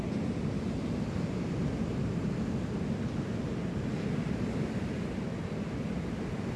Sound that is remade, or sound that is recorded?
recorded